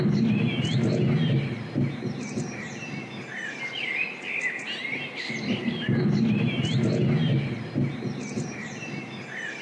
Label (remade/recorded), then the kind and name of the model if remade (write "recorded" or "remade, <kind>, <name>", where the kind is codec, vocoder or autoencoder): recorded